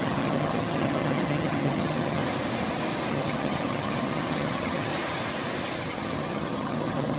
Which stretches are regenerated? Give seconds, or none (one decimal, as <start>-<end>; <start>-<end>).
0.0-2.2; 3.1-4.9; 5.8-7.2

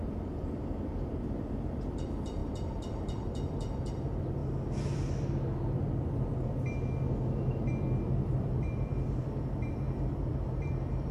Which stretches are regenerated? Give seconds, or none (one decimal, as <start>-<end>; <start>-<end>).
0.0-4.4; 8.3-11.1